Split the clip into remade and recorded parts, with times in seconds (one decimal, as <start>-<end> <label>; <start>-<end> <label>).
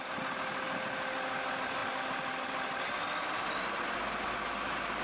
0.0-5.0 recorded